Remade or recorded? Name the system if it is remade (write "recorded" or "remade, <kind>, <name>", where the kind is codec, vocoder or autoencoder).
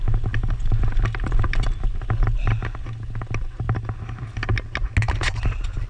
recorded